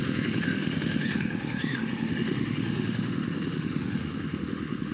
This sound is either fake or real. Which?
fake